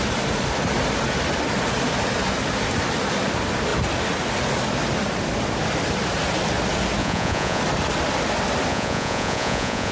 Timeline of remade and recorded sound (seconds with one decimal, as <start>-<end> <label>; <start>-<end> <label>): 0.0-7.0 recorded; 7.0-7.6 remade; 7.6-8.7 recorded; 8.7-9.9 remade